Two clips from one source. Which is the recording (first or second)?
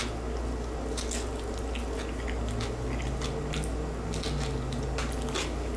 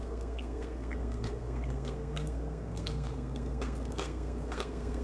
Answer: first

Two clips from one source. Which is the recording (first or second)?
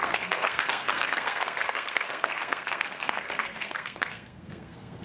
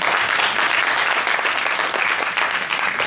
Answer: second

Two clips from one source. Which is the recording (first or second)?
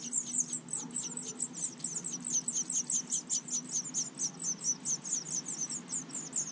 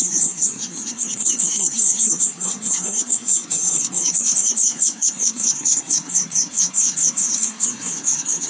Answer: first